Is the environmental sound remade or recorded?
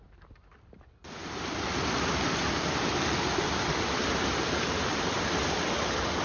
recorded